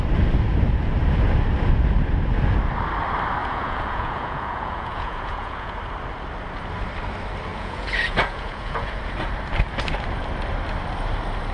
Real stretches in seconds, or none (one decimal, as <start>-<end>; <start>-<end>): 0.0-3.4; 5.8-7.5; 9.0-11.5